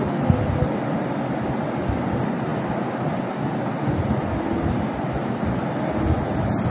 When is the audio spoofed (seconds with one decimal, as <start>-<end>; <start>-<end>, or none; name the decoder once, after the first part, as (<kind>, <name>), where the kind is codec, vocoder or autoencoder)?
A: none